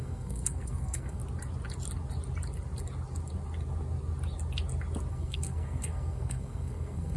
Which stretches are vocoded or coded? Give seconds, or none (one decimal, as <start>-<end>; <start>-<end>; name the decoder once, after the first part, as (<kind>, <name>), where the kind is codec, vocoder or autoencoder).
0.0-1.2 (codec, SNAC); 5.1-7.2